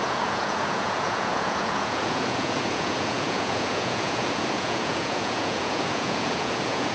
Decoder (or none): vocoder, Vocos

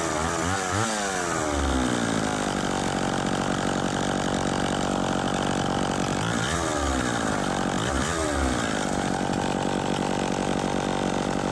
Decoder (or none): none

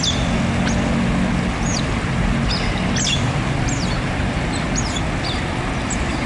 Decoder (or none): none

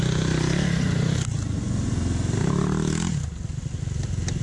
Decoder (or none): none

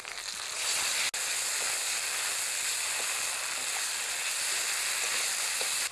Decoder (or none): none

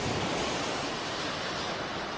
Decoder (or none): none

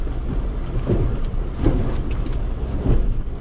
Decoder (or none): none